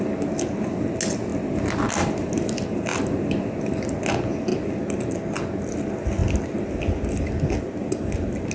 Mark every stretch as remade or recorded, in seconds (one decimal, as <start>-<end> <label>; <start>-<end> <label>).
0.0-8.5 recorded